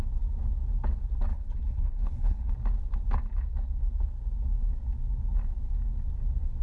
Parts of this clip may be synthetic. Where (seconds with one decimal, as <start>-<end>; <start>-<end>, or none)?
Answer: 1.3-2.5